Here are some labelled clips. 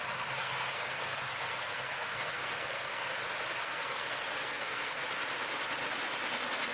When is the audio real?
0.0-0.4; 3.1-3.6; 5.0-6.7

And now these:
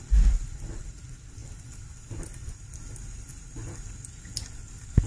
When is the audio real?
0.0-5.1

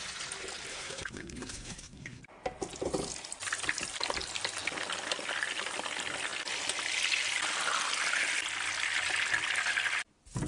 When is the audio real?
0.0-0.7; 2.2-10.5

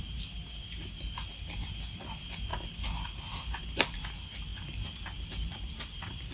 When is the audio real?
0.0-6.3